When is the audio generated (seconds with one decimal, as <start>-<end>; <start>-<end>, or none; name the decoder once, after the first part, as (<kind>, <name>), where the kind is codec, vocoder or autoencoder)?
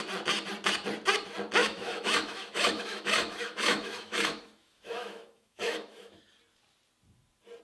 1.6-6.2 (autoencoder, DAC-VAE)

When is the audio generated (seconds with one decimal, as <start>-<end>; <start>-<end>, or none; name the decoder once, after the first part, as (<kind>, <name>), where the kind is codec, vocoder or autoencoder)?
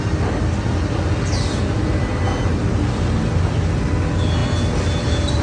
none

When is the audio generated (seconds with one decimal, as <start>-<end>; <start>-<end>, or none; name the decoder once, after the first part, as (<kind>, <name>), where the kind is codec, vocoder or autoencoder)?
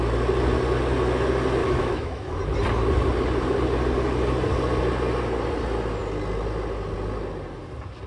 1.6-2.4 (autoencoder, DAC-VAE)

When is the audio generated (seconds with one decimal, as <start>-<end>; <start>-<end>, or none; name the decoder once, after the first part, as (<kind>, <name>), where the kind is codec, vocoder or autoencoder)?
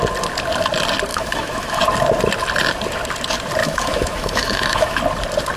1.1-1.8 (autoencoder, DAC-VAE); 3.6-5.0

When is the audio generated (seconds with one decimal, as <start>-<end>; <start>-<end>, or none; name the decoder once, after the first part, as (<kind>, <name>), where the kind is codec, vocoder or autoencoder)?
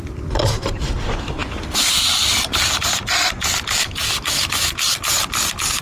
3.8-4.8 (autoencoder, DAC-VAE)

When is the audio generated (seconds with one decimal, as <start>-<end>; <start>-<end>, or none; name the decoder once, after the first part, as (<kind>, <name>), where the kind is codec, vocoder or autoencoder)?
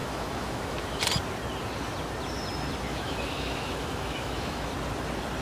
0.0-1.0 (autoencoder, DAC-VAE); 2.9-4.7